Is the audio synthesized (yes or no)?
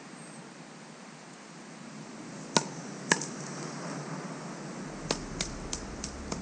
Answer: no